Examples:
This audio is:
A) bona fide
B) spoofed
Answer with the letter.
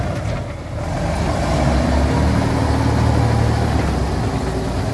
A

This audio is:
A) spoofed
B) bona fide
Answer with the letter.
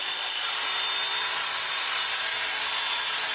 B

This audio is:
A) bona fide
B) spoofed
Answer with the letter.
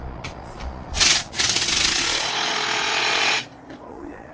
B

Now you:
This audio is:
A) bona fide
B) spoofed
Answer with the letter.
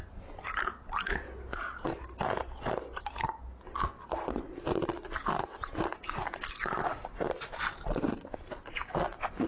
A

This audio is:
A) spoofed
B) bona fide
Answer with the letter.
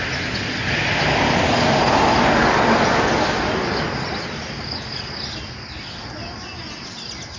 B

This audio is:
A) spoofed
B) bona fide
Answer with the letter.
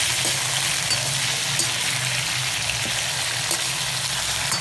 B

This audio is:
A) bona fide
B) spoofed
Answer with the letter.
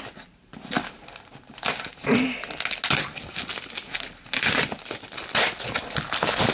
A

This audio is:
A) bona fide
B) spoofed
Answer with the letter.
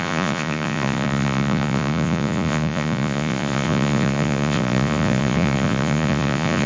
B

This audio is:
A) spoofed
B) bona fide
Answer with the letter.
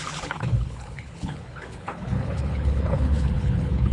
A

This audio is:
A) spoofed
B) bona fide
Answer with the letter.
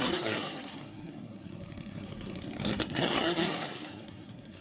A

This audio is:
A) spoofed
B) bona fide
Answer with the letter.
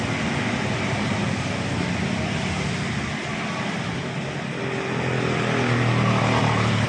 B